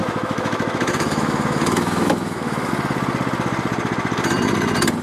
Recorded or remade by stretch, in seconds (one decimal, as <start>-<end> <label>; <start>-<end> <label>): 0.0-2.7 remade; 2.7-5.0 recorded